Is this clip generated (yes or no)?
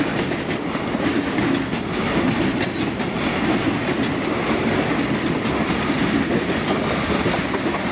no